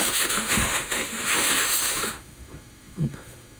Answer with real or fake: fake